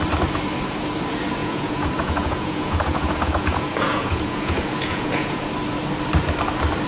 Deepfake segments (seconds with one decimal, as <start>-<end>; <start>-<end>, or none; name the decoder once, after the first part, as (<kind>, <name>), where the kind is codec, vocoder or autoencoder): 1.4-5.5 (vocoder, Vocos)